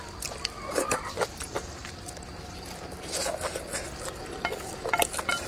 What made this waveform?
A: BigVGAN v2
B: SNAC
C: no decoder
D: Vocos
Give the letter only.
C